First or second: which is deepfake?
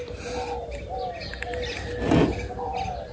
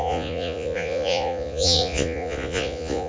second